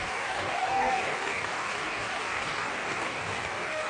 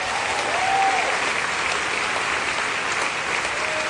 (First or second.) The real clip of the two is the second